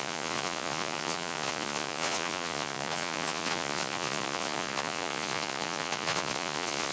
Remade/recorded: remade